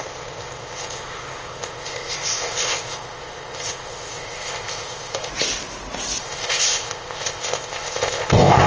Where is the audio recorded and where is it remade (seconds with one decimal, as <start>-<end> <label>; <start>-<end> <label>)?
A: 0.0-5.3 remade; 5.3-6.2 recorded; 6.2-8.7 remade

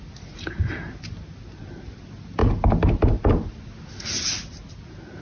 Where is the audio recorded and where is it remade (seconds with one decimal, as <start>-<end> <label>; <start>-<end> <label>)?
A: 0.0-5.2 recorded

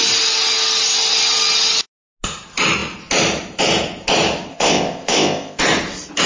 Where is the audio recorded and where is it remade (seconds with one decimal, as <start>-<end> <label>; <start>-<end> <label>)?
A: 0.0-4.5 recorded; 4.5-5.6 remade; 5.6-6.3 recorded

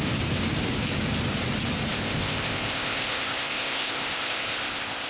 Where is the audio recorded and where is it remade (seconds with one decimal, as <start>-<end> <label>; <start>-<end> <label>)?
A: 0.0-1.9 recorded; 1.9-5.1 remade

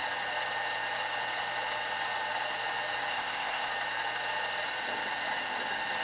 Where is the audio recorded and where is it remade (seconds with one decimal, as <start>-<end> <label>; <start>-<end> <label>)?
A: 0.0-3.1 recorded; 3.1-3.7 remade; 3.7-6.0 recorded

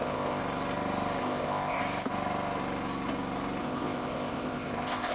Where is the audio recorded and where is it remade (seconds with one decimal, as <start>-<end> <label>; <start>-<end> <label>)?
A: 0.0-0.4 remade; 0.4-1.2 recorded; 1.2-1.8 remade; 1.8-3.6 recorded; 3.6-5.1 remade